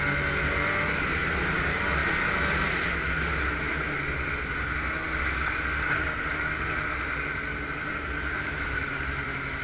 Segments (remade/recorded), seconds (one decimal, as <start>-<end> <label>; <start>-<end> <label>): 0.0-9.6 recorded